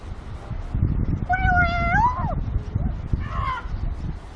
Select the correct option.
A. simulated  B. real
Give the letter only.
B